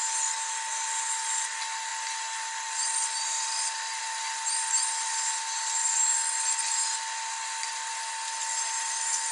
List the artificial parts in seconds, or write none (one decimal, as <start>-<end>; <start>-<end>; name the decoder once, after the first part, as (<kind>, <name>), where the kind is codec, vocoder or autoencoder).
none